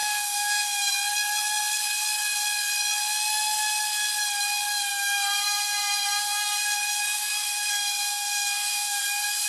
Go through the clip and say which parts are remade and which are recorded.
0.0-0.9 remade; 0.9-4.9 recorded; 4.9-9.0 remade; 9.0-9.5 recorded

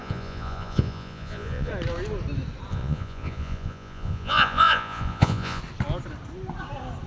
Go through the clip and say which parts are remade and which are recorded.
0.0-1.7 remade; 1.7-2.7 recorded; 2.7-5.6 remade; 5.6-7.1 recorded

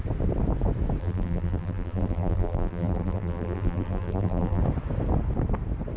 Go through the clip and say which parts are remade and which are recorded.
0.0-1.0 recorded; 1.0-4.6 remade; 4.6-6.0 recorded

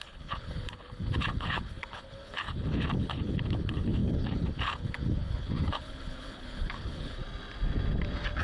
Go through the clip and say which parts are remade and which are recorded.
0.0-7.2 remade; 7.2-8.4 recorded

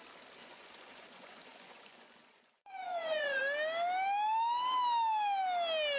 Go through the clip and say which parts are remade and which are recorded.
0.0-0.4 recorded; 0.4-3.4 remade; 3.4-6.0 recorded

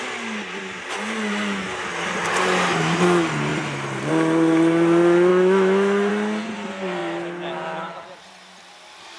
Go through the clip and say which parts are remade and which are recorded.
0.0-5.3 recorded; 5.3-6.1 remade; 6.1-9.2 recorded

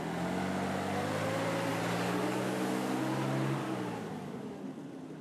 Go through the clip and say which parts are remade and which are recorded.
0.0-1.7 recorded; 1.7-3.0 remade; 3.0-3.6 recorded; 3.6-4.6 remade; 4.6-5.2 recorded

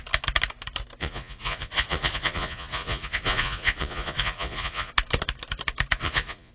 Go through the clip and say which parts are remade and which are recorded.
0.0-1.0 recorded; 1.0-4.9 remade; 4.9-6.0 recorded; 6.0-6.5 remade